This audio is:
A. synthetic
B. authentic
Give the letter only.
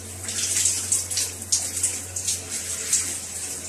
B